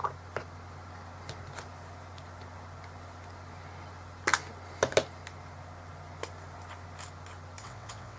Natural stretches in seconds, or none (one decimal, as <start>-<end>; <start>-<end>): 0.0-7.6